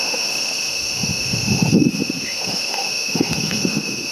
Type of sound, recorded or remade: remade